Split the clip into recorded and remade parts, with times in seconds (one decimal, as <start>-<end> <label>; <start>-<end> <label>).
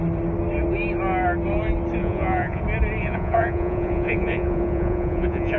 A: 0.0-2.0 recorded; 2.0-2.6 remade; 2.6-3.0 recorded; 3.0-5.6 remade